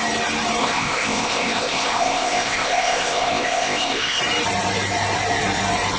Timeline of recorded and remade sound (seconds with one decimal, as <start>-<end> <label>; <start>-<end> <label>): 0.0-0.6 recorded; 0.6-4.2 remade; 4.2-6.0 recorded